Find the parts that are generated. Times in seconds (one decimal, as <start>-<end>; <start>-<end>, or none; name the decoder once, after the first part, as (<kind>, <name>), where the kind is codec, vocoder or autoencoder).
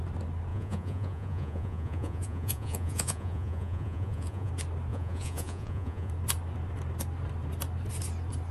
0.5-4.5 (vocoder, Vocos); 4.9-6.1